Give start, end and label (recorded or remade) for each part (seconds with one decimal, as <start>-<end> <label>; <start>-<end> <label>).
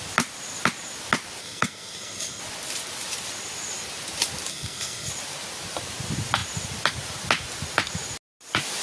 0.0-1.4 recorded; 1.4-2.4 remade; 2.4-4.5 recorded; 4.5-5.1 remade; 5.1-8.8 recorded